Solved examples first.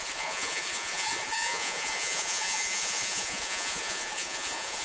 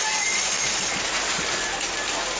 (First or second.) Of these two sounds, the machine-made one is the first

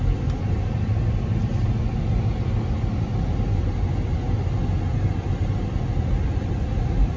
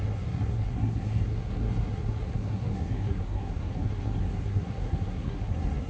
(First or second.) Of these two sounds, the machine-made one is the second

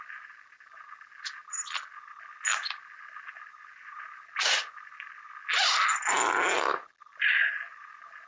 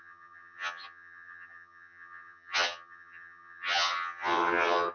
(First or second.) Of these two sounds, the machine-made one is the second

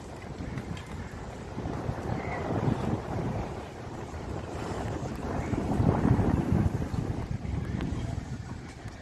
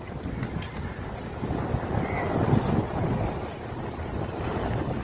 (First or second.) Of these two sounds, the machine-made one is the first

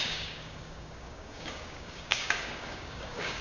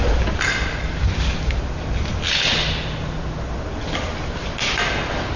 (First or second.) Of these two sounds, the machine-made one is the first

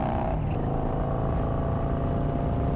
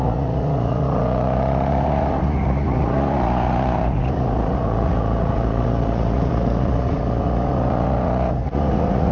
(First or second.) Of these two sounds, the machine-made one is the second